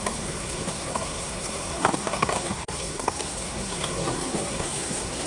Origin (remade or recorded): remade